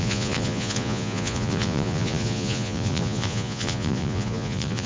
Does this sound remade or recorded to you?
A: remade